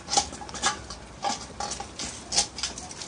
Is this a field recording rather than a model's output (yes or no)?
yes